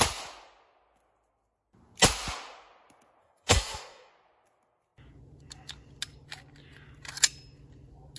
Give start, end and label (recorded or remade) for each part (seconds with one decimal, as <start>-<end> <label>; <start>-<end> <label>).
0.0-3.2 recorded; 3.2-4.1 remade; 4.1-8.2 recorded